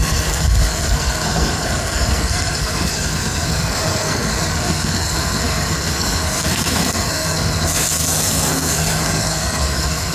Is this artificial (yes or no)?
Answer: yes